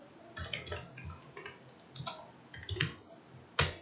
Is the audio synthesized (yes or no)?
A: no